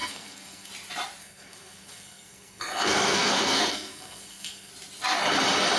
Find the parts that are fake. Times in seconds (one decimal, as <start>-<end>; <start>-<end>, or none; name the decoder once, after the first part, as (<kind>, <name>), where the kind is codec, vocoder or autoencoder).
0.0-0.7 (codec, SNAC); 1.2-4.7